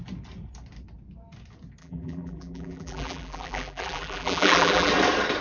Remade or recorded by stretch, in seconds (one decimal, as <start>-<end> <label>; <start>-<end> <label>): 0.0-1.8 recorded; 1.8-4.9 remade; 4.9-5.4 recorded